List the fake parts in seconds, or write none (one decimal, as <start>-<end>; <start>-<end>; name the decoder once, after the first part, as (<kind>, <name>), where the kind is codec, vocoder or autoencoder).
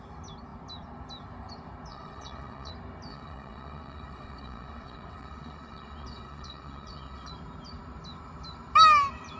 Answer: 1.9-2.7 (vocoder, WaveNeXt); 3.1-7.3